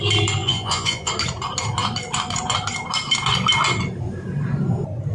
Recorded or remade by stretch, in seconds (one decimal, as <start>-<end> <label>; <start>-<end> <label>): 0.0-0.4 recorded; 0.4-1.1 remade; 1.1-5.1 recorded